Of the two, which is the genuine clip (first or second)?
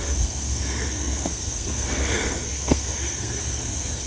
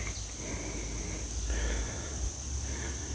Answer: second